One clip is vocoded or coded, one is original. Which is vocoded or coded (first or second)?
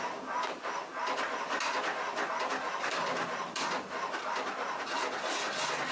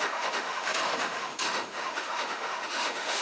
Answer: second